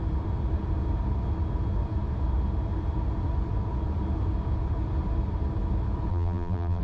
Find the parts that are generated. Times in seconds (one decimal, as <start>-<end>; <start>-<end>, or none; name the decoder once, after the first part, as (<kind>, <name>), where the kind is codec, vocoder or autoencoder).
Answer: 6.1-6.8 (vocoder, BigVGAN v2)